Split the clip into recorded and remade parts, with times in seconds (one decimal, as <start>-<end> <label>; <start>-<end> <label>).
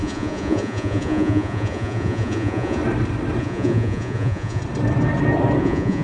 0.0-2.8 remade; 2.8-3.4 recorded; 3.4-4.6 remade; 4.6-5.6 recorded; 5.6-6.0 remade